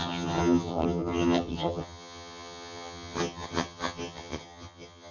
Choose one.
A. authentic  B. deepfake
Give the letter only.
B